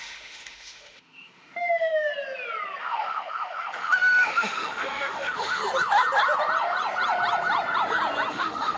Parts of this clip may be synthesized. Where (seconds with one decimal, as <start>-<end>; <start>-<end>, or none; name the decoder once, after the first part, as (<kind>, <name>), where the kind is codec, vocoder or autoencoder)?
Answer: 0.0-2.1 (autoencoder, DAC-VAE); 2.8-5.6; 8.3-8.8

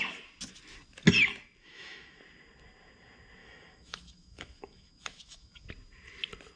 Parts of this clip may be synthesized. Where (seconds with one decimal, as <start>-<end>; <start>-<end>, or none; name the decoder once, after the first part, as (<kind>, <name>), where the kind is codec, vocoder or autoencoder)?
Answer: 1.6-2.2 (autoencoder, DAC-VAE); 3.4-5.7

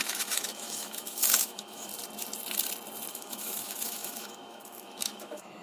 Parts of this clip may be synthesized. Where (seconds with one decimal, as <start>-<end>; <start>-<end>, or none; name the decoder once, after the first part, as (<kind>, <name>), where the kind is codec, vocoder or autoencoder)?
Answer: 0.0-1.9 (autoencoder, DAC-VAE); 3.1-5.6

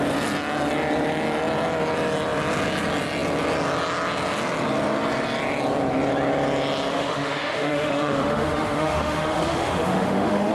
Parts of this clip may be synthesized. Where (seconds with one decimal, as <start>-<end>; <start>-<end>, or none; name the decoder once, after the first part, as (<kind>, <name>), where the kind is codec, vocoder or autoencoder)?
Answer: 6.9-10.5 (autoencoder, DAC-VAE)

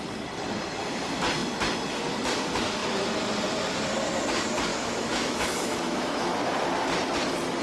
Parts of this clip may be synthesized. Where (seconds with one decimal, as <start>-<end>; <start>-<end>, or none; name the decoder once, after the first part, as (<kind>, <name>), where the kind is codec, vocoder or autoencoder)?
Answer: 4.7-6.3 (autoencoder, DAC-VAE)

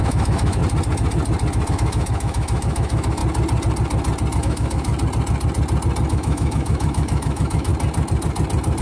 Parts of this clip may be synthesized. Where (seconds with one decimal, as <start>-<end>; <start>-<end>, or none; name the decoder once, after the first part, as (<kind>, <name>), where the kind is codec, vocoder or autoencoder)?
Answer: 0.0-0.6 (autoencoder, DAC-VAE); 1.7-3.2; 4.4-4.9; 6.1-7.7

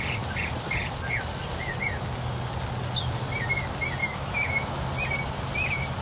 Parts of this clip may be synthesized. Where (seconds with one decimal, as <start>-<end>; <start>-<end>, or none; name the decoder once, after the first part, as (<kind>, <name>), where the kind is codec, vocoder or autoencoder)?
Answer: 4.0-4.8 (autoencoder, DAC-VAE)